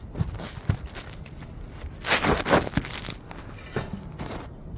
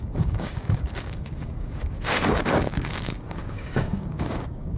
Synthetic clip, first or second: second